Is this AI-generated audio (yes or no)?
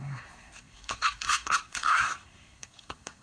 yes